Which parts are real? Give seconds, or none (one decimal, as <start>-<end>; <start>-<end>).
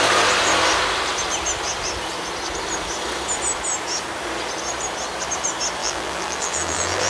0.0-5.8